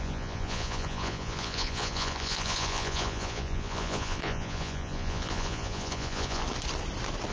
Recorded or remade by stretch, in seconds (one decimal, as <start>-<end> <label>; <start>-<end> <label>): 0.0-6.4 remade; 6.4-7.3 recorded